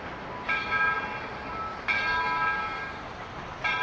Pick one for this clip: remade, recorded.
recorded